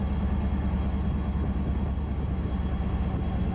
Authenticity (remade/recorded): recorded